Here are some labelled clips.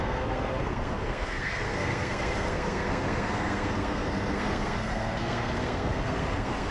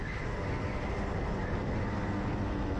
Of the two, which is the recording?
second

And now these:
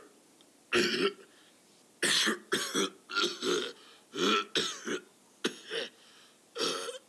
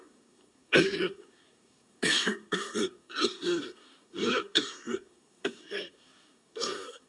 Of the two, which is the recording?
first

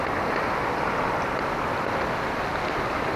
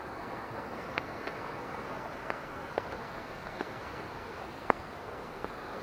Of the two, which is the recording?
first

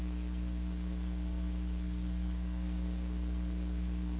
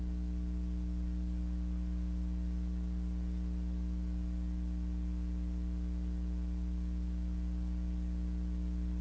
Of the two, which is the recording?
second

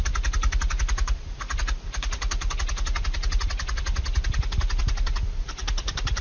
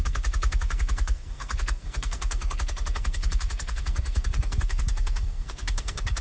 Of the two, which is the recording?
first